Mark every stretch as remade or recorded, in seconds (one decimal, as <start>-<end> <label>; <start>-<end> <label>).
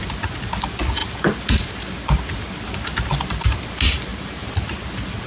0.0-4.1 recorded; 4.1-4.8 remade; 4.8-5.3 recorded